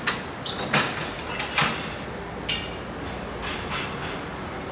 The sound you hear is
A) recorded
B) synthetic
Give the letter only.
A